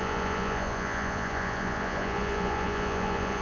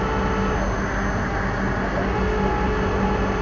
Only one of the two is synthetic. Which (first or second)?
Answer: first